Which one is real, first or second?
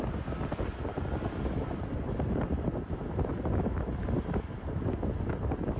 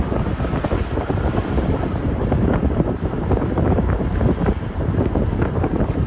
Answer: first